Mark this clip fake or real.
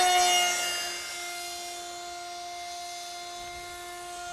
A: real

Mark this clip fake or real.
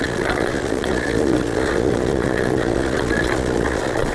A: fake